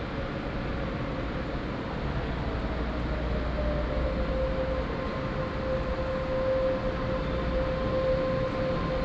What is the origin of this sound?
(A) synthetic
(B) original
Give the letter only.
B